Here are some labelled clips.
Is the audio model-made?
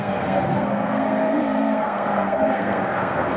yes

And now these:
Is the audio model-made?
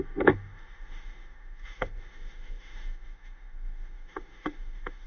yes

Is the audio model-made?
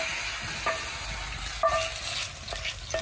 no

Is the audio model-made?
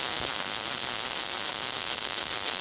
no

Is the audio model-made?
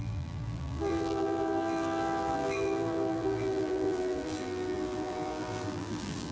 yes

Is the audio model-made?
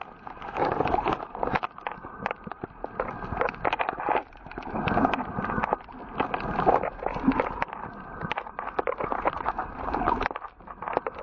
no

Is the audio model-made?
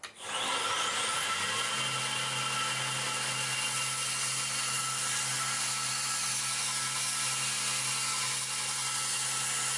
no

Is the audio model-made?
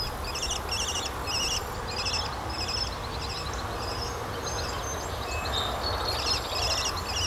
no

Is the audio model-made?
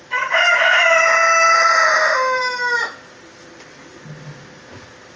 no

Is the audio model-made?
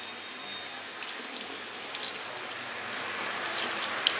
no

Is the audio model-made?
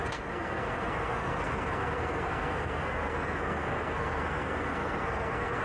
yes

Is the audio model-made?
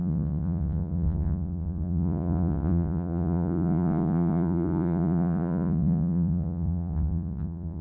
yes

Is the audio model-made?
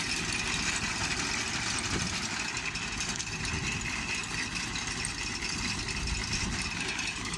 no